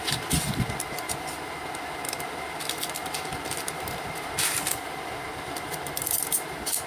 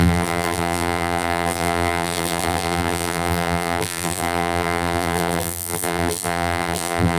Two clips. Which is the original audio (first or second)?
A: first